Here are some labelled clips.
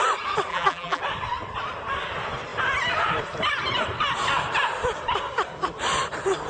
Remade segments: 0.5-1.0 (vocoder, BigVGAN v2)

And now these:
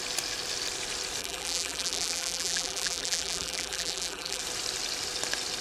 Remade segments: 1.2-4.4 (vocoder, BigVGAN v2)

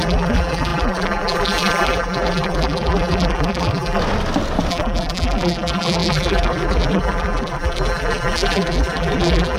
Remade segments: 0.0-4.0 (vocoder, BigVGAN v2); 4.7-9.6

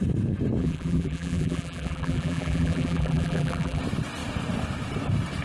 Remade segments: 0.6-3.8 (vocoder, BigVGAN v2)

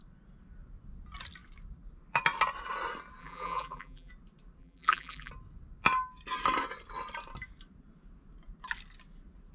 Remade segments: 3.2-4.1 (vocoder, BigVGAN v2); 4.6-5.3

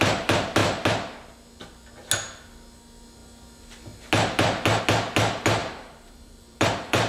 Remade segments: 5.6-7.1 (vocoder, BigVGAN v2)

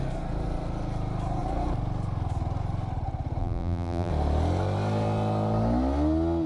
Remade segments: 3.4-4.1 (vocoder, BigVGAN v2)